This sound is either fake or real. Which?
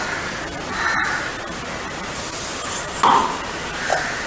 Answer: real